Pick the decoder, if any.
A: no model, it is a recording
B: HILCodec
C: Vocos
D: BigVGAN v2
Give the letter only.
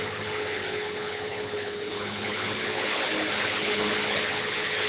B